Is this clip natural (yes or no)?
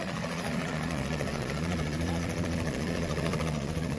no